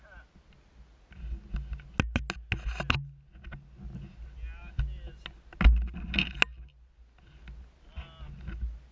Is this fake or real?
real